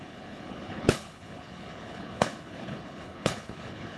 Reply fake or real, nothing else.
fake